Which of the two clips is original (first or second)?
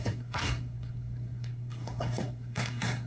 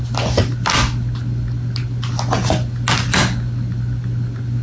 second